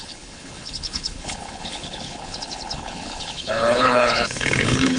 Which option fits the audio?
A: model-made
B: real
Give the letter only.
A